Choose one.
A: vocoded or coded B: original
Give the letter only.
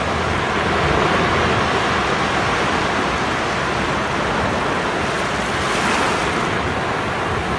B